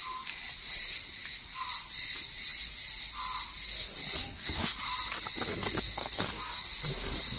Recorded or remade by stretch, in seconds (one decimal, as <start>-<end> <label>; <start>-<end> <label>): 0.0-4.2 recorded; 4.2-4.7 remade; 4.7-5.5 recorded; 5.5-6.6 remade; 6.6-7.4 recorded